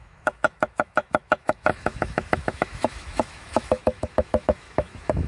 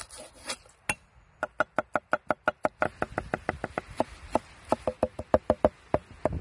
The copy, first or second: first